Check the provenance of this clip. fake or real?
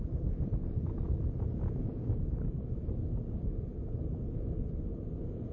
real